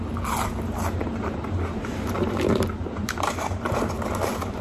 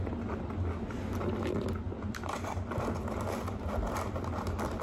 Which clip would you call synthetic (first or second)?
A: first